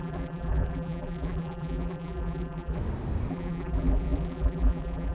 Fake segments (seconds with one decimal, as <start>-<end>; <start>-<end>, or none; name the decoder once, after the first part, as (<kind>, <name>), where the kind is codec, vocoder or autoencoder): 0.0-2.8 (vocoder, BigVGAN v2); 3.3-5.1